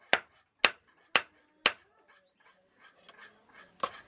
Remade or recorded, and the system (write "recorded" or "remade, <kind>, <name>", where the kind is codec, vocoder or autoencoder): recorded